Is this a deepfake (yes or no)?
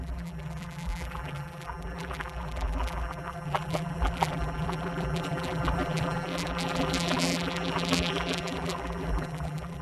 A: yes